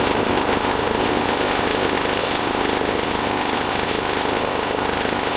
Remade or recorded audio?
remade